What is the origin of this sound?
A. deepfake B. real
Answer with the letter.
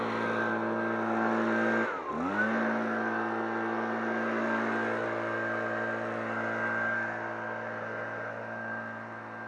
B